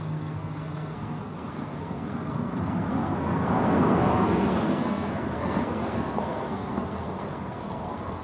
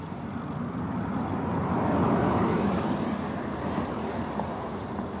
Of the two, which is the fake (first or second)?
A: first